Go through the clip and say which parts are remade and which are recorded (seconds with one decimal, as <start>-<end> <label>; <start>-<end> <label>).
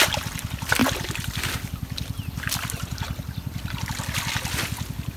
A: 0.0-0.8 recorded; 0.8-3.9 remade; 3.9-5.2 recorded